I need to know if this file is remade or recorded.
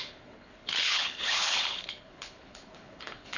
remade